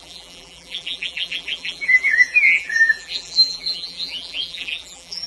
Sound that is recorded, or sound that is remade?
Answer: remade